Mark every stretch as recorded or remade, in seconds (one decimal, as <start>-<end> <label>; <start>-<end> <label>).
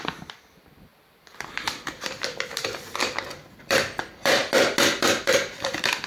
0.0-4.4 remade; 4.4-5.2 recorded; 5.2-6.1 remade